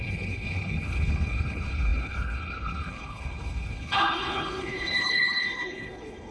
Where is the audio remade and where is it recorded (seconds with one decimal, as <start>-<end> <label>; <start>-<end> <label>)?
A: 0.0-6.3 remade